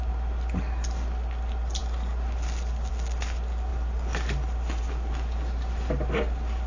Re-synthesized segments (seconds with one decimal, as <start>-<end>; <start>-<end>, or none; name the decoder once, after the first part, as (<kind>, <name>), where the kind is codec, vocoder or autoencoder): none